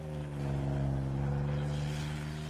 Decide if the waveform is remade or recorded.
recorded